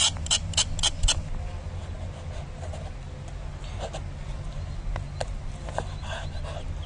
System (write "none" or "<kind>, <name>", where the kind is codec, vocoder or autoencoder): none